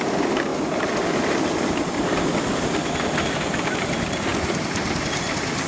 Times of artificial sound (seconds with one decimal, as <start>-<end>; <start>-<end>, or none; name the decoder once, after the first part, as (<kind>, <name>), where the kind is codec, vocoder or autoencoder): none